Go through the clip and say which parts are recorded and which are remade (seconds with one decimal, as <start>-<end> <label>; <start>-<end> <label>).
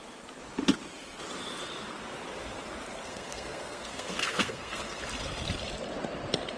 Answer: 0.0-3.0 recorded; 3.0-5.0 remade; 5.0-6.6 recorded